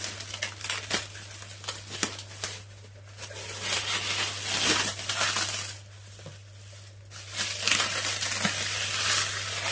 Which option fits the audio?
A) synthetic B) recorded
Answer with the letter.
B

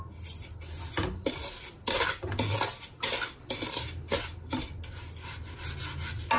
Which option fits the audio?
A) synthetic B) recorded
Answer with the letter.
B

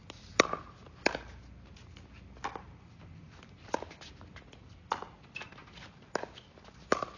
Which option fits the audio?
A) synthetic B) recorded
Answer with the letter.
B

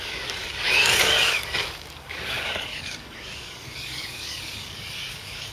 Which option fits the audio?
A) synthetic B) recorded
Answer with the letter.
A